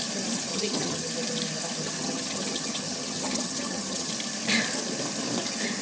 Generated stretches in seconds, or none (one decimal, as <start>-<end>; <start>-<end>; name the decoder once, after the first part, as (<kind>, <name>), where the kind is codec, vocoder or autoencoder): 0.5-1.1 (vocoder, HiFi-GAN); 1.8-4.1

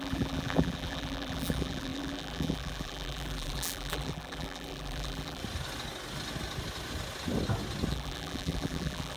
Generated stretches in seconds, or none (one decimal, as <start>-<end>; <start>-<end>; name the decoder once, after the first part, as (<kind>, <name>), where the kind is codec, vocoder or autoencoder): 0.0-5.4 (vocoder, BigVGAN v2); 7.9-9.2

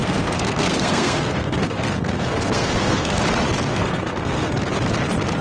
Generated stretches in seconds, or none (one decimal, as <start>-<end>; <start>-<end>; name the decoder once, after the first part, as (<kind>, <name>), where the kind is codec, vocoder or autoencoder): 0.0-3.2 (codec, SNAC); 3.7-4.5

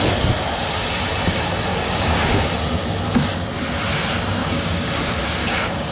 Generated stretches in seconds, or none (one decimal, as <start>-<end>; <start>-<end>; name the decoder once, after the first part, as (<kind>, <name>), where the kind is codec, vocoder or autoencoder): 1.7-2.5 (codec, DAC); 4.4-5.0; 5.4-5.9

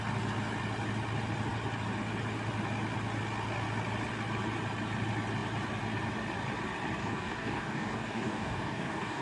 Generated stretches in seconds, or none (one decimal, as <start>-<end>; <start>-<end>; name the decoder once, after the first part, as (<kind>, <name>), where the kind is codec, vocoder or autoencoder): 7.0-9.2 (codec, DAC)

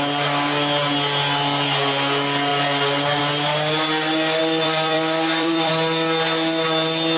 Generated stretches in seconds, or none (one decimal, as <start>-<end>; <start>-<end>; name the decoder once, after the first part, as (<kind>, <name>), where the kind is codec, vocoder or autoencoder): 4.4-5.7 (vocoder, BigVGAN v2)

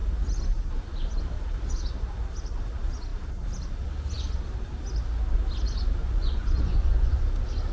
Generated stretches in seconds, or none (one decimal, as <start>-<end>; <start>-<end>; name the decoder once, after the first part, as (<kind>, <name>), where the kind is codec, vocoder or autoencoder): 6.0-7.2 (vocoder, Vocos)